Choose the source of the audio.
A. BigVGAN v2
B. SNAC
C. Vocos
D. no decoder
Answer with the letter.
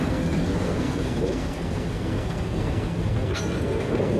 B